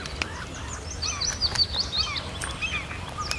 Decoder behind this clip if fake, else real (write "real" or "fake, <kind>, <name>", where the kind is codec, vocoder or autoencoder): real